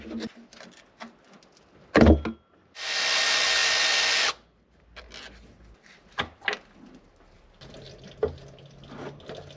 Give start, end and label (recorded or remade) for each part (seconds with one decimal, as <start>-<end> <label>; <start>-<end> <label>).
0.0-9.6 recorded